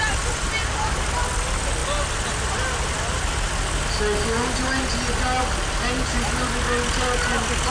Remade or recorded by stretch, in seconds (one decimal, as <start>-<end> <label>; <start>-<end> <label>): 0.0-7.7 recorded